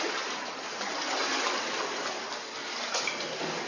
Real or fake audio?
real